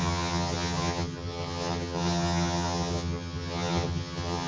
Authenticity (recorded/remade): remade